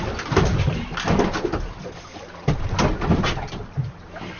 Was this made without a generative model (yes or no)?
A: yes